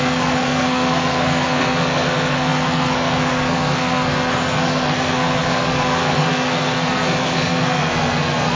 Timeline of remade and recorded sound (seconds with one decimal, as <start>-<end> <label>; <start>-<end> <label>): 0.0-8.6 remade